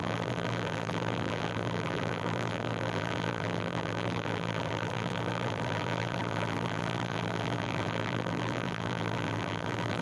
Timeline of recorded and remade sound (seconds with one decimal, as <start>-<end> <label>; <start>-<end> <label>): 0.0-10.0 remade